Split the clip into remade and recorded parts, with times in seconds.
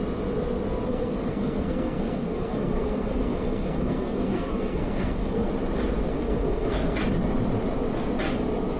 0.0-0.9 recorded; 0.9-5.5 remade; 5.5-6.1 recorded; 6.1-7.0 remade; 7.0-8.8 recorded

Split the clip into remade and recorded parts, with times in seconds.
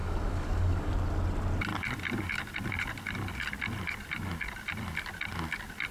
0.0-0.9 remade; 0.9-5.9 recorded